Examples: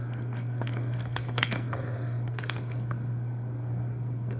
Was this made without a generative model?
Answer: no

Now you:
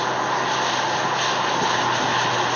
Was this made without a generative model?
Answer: yes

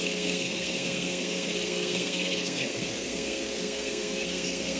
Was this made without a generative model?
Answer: no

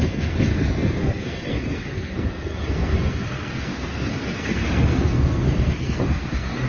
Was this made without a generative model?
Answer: no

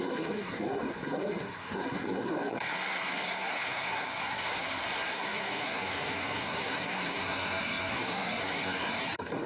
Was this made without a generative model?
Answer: no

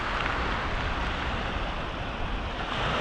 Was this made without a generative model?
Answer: yes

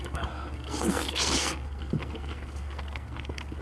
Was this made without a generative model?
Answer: no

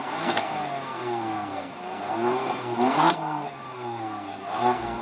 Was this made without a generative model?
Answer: no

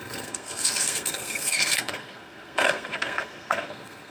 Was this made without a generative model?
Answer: no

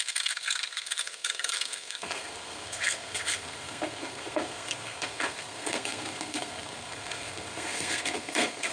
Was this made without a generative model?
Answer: no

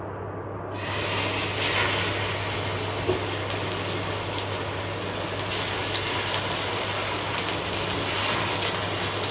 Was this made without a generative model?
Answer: yes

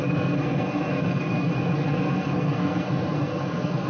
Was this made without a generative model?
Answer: no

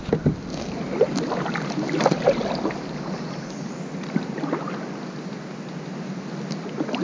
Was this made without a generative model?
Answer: yes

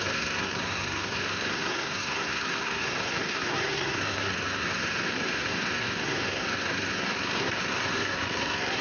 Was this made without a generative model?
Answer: no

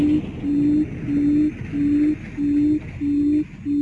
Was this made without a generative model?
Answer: yes